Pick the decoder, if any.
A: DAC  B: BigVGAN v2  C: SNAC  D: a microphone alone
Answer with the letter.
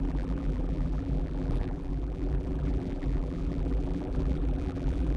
B